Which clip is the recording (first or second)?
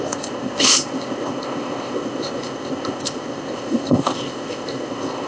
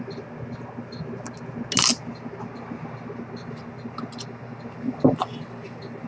second